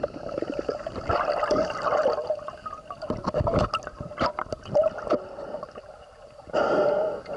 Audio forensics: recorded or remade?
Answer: recorded